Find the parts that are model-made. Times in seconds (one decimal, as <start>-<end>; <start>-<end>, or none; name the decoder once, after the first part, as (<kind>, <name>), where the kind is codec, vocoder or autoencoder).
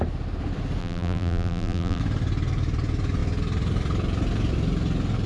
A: 0.8-2.0 (vocoder, BigVGAN v2)